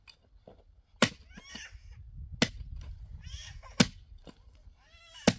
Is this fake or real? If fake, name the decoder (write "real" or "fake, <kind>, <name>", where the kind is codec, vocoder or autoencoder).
real